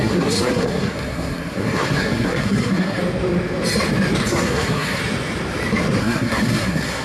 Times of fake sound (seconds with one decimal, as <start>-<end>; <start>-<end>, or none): 0.0-3.0; 4.3-5.0; 6.0-7.0